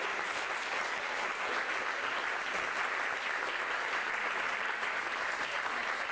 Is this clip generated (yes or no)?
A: no